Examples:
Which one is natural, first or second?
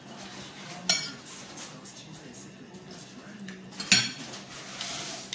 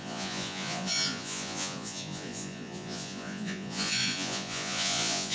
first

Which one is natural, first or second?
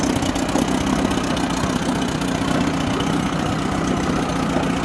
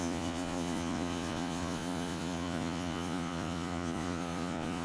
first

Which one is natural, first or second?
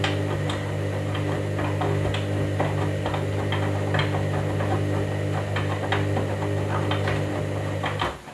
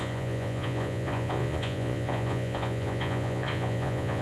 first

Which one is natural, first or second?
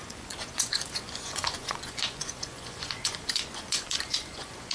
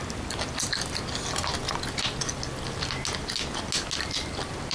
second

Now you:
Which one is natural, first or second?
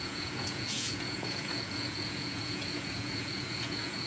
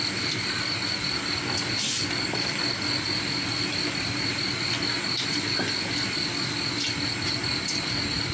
second